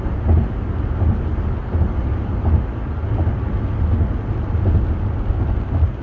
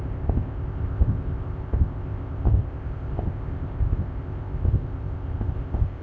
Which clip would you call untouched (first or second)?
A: first